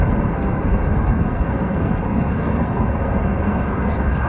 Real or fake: fake